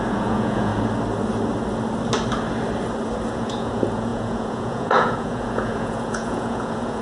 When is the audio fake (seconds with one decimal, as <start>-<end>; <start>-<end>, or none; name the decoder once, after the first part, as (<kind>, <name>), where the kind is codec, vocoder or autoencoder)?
0.0-0.7 (vocoder, Vocos); 3.3-7.0